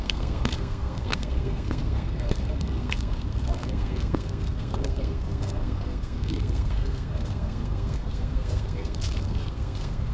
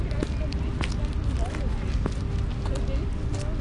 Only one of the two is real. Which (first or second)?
second